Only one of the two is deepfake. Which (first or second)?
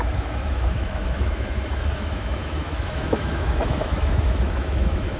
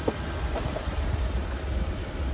first